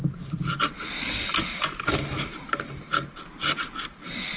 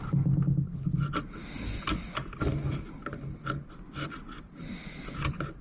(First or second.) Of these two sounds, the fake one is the first